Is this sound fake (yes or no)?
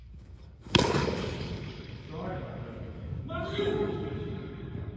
yes